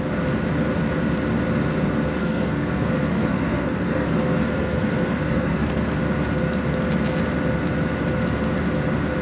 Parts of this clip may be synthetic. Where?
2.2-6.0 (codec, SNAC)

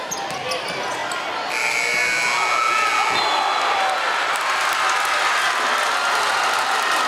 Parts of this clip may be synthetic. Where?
none

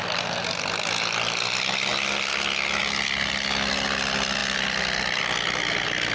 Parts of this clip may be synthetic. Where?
none

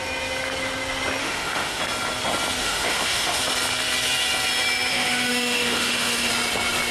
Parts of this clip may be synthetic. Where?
1.2-1.8 (autoencoder, DAC-VAE); 2.6-3.4; 4.9-6.3

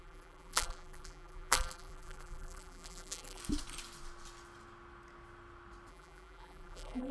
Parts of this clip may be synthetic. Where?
0.0-3.4 (vocoder, BigVGAN v2); 5.9-7.1